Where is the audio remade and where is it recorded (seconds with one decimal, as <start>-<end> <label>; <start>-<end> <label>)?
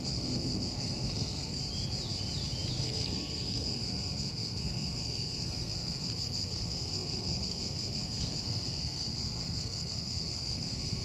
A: 0.0-1.6 remade; 1.6-2.8 recorded; 2.8-11.0 remade